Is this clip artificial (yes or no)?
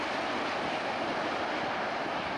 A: no